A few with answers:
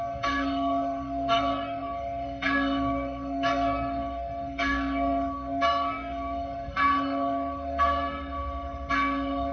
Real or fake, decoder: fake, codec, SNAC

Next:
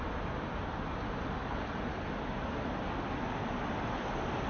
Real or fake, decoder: real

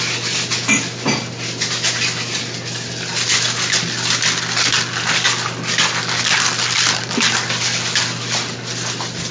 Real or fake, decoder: real